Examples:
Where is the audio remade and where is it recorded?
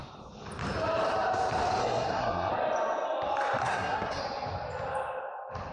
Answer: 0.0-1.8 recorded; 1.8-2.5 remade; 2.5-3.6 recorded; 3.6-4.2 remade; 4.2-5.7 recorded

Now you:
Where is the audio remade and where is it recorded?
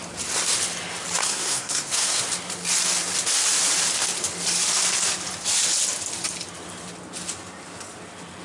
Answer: 0.0-1.2 recorded; 1.2-2.2 remade; 2.2-8.4 recorded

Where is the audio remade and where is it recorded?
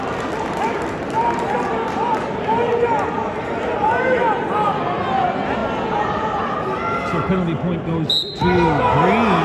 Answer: 0.0-9.4 recorded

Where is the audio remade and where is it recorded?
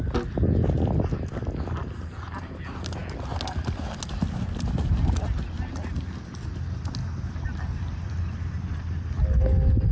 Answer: 0.0-9.9 recorded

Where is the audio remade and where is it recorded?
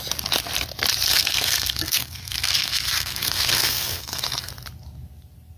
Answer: 0.0-1.1 recorded; 1.1-4.5 remade; 4.5-5.6 recorded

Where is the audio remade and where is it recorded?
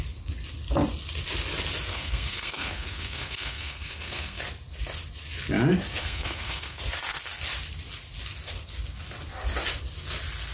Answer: 0.0-1.9 recorded; 1.9-4.4 remade; 4.4-6.0 recorded; 6.0-6.8 remade; 6.8-10.5 recorded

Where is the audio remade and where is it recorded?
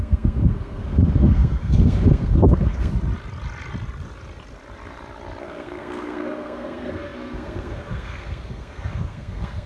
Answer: 0.0-2.9 remade; 2.9-5.4 recorded; 5.4-9.7 remade